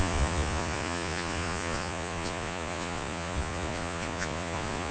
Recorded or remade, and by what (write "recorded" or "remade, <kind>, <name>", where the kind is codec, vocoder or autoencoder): remade, vocoder, Vocos